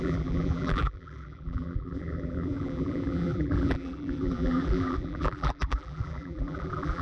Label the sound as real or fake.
fake